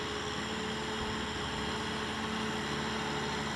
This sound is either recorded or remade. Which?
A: recorded